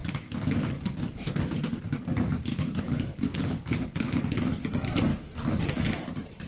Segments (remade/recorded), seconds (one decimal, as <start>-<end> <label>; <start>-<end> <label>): 0.0-1.0 remade; 1.0-2.5 recorded; 2.5-4.2 remade; 4.2-5.1 recorded; 5.1-5.6 remade; 5.6-6.5 recorded